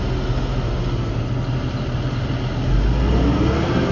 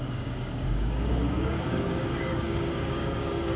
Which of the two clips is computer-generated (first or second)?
second